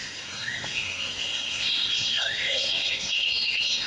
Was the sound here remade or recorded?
remade